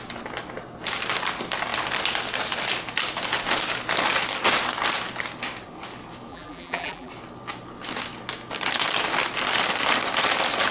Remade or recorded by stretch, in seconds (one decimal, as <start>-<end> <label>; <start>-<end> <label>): 0.0-6.3 recorded; 6.3-7.1 remade; 7.1-10.7 recorded